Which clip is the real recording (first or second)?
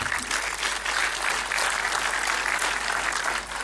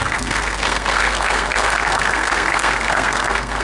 first